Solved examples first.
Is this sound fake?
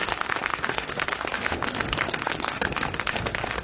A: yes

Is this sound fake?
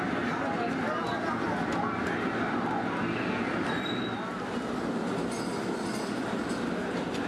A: no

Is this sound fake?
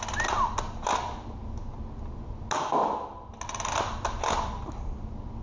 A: no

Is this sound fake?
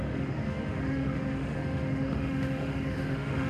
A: yes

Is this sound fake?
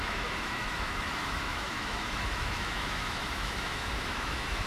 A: yes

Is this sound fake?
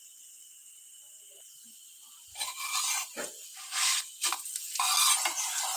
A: no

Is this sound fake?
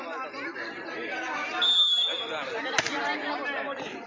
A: no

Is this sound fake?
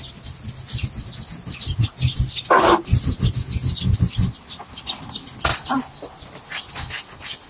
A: no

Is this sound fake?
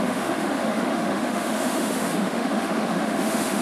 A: yes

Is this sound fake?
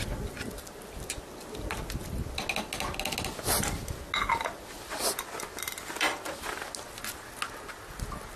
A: no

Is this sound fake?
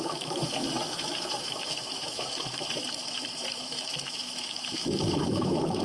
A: yes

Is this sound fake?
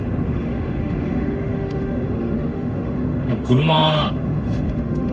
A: yes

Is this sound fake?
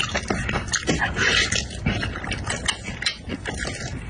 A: no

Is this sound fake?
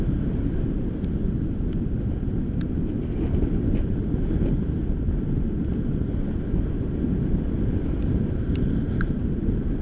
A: no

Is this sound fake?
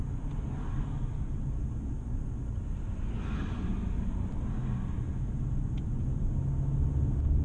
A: no